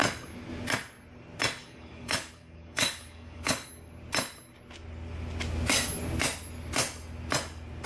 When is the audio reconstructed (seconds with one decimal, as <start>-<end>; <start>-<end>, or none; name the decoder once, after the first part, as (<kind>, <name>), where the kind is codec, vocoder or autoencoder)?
1.6-3.7 (codec, DAC)